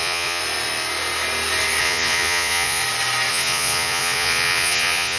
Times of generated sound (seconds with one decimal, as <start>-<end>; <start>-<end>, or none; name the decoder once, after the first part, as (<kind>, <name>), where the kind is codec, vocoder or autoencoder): 0.0-0.4 (vocoder, Vocos); 1.8-2.8; 3.3-5.2